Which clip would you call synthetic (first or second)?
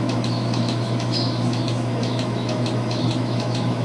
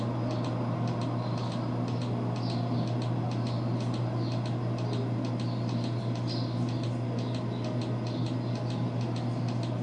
first